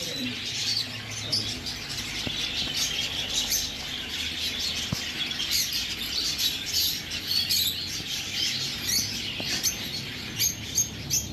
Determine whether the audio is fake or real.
real